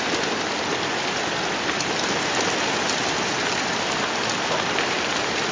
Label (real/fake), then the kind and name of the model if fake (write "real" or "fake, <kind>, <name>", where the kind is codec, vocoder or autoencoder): real